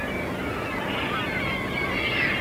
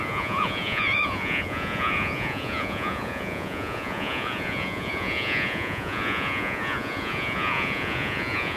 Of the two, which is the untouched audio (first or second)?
first